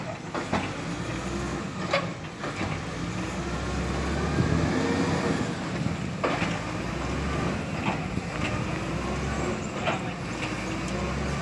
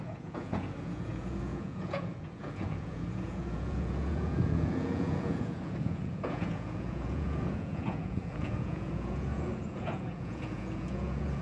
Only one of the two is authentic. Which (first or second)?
first